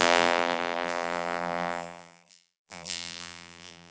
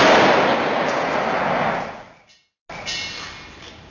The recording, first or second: second